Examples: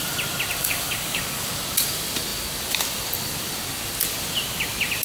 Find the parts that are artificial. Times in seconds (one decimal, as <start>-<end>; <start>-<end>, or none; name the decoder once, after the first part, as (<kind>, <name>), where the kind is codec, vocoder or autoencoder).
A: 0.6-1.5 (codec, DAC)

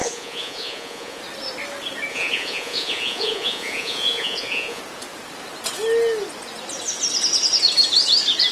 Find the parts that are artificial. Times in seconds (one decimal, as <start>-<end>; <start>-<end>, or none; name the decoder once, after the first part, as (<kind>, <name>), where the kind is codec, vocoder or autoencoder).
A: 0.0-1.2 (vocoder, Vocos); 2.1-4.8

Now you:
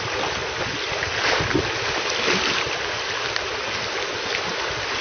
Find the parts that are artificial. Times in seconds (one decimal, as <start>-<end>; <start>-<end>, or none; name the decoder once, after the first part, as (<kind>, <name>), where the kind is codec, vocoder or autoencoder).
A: none

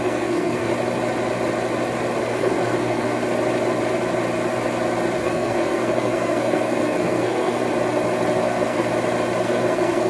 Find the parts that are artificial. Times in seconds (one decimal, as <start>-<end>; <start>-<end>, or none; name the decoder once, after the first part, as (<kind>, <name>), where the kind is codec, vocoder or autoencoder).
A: 0.0-0.7 (codec, SNAC); 2.2-3.2; 5.2-7.6; 8.4-8.9; 9.4-10.1

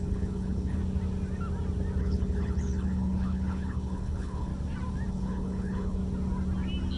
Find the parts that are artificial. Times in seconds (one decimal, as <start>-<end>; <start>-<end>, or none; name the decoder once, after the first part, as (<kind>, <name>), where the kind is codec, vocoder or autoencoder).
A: 0.0-0.8 (codec, HILCodec); 2.0-4.5; 5.1-6.0